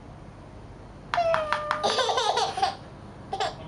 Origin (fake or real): real